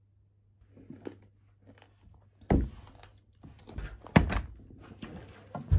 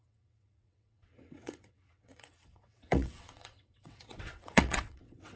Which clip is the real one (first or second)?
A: first